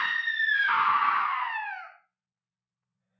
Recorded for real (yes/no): no